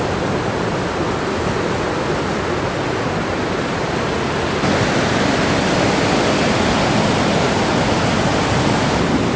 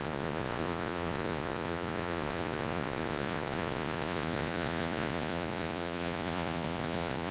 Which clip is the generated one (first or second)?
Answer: second